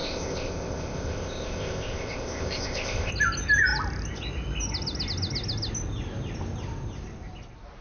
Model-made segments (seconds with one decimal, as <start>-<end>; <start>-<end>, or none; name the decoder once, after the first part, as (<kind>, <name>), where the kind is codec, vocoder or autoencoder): 0.0-3.1 (codec, ZipCodec)